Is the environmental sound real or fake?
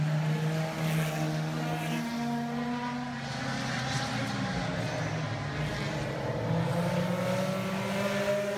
real